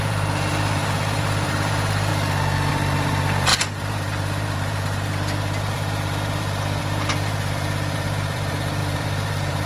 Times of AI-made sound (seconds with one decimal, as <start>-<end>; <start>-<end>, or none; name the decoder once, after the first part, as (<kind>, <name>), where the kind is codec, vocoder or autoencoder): 0.0-2.1 (vocoder, BigVGAN v2); 2.7-9.7

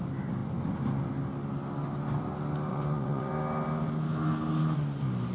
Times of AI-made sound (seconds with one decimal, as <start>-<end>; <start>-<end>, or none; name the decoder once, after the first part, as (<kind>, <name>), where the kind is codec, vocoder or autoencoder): 2.7-3.3 (vocoder, Vocos)

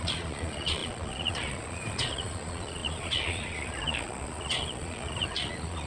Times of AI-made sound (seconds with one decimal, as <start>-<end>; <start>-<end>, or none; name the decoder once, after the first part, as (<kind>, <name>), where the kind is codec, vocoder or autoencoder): 0.0-5.9 (vocoder, Vocos)

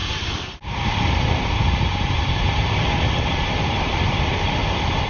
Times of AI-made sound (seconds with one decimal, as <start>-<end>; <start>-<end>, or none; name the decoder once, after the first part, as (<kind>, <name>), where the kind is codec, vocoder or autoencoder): 0.0-2.8 (vocoder, BigVGAN v2)

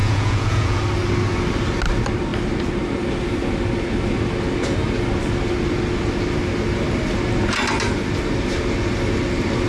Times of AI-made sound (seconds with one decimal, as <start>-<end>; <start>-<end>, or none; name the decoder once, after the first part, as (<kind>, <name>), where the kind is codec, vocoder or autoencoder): 0.0-0.8 (vocoder, Vocos)

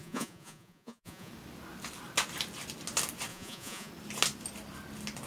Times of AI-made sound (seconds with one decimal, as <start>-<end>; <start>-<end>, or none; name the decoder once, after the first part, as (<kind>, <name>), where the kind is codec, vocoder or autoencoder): 0.0-1.3 (vocoder, Vocos); 3.3-3.9

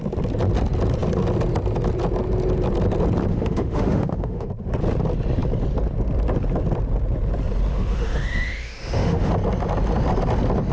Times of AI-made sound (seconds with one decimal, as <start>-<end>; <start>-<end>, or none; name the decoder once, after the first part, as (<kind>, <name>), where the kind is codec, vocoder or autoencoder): 3.3-4.5 (autoencoder, DAC-VAE); 7.7-9.3

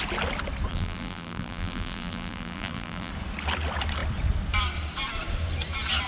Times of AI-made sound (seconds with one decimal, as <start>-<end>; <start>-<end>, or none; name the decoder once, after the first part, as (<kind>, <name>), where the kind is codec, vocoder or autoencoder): 0.7-3.1 (vocoder, BigVGAN v2)